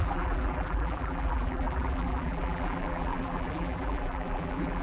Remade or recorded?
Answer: remade